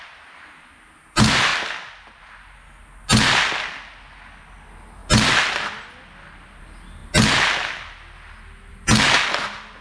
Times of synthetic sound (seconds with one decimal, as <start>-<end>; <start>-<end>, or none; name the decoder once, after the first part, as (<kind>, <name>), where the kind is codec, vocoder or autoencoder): none